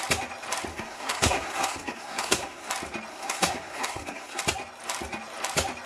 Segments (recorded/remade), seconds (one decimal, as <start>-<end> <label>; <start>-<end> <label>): 0.0-0.7 recorded; 0.7-2.7 remade; 2.7-3.1 recorded; 3.1-4.4 remade; 4.4-5.9 recorded